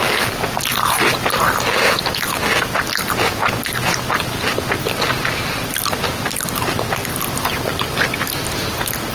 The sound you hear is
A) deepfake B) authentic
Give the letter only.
B